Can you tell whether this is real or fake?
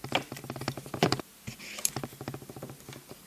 real